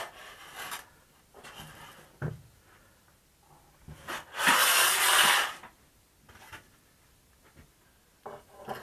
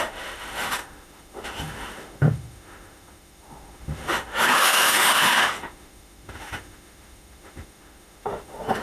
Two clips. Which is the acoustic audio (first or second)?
first